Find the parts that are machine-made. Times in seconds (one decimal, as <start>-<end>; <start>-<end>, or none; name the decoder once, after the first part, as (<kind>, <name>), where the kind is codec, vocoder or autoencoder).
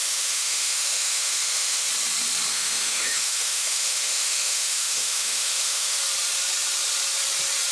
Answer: 0.0-1.9 (autoencoder, DAC-VAE); 2.5-6.0